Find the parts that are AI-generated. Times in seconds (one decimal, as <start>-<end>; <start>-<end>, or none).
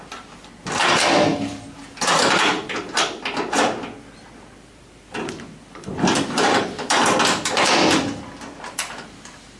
none